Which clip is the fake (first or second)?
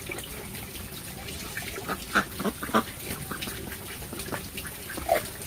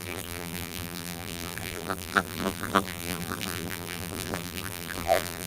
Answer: second